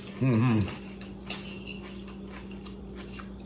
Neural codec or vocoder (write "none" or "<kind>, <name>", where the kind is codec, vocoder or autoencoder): none